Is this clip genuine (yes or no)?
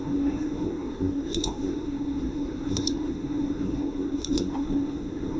no